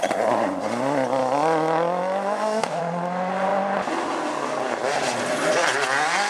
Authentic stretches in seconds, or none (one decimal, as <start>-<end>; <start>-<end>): 0.0-1.2; 2.8-6.3